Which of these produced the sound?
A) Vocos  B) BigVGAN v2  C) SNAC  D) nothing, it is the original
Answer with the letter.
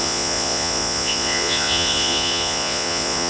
A